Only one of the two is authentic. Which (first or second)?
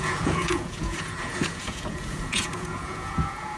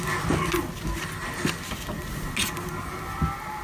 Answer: second